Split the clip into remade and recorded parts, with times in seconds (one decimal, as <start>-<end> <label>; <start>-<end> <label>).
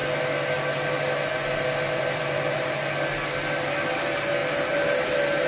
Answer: 0.0-5.5 recorded